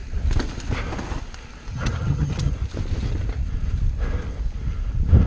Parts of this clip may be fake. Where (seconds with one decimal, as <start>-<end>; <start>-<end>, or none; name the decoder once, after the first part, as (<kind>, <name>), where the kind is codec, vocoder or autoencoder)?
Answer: 1.7-2.5 (vocoder, HiFi-GAN)